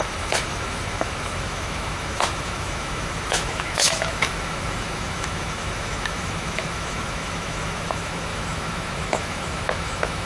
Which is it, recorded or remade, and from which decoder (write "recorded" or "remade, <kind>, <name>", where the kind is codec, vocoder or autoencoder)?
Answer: remade, autoencoder, DAC-VAE